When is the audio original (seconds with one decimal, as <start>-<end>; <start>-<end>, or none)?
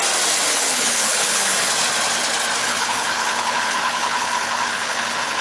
0.0-0.5; 1.7-2.6